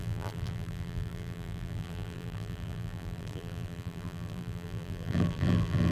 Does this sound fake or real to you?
fake